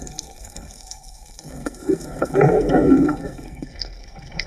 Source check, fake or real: fake